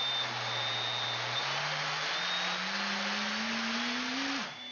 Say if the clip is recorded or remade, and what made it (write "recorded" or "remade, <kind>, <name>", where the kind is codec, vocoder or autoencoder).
recorded